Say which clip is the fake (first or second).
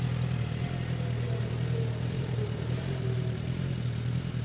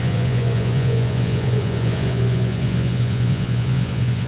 second